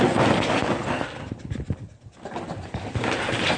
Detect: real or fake real